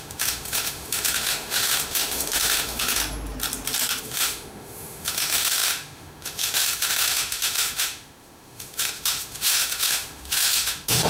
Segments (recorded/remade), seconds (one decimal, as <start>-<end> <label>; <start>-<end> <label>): 0.0-3.0 remade; 3.0-4.0 recorded; 4.0-11.1 remade